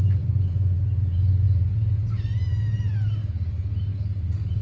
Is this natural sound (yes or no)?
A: yes